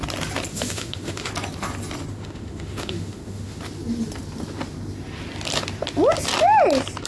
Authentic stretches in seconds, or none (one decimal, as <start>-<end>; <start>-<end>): 0.0-0.5; 1.3-2.1; 3.6-7.1